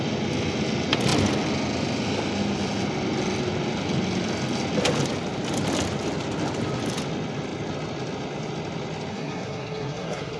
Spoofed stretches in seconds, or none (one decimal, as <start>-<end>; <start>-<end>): 9.1-10.4